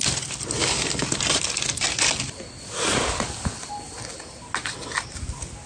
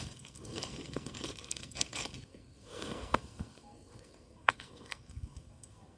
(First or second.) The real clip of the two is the first